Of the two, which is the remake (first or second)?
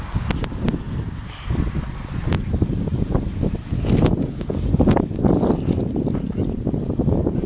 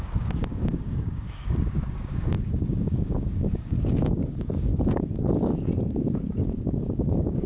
second